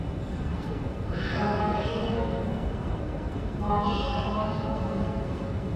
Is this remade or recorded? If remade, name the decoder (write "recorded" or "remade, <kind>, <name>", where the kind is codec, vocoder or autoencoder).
remade, codec, SNAC